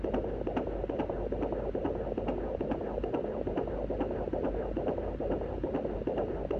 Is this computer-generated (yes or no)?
no